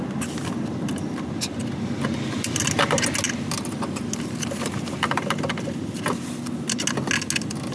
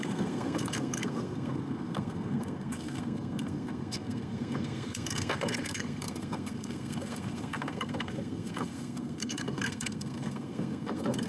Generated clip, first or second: second